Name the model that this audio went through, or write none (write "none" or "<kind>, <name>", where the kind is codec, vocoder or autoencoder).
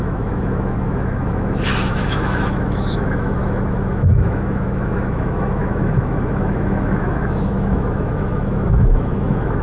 autoencoder, DAC-VAE